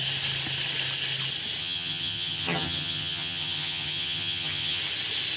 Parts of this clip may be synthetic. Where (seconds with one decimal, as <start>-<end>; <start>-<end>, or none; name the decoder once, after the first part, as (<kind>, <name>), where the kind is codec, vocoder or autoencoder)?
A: 1.6-4.8 (vocoder, HiFi-GAN)